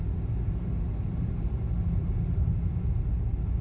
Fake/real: real